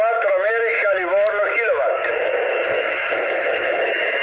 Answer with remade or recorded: remade